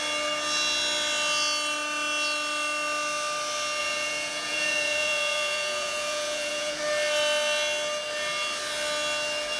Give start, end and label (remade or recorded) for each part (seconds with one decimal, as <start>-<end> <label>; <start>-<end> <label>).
0.0-3.8 recorded; 3.8-6.8 remade; 6.8-9.6 recorded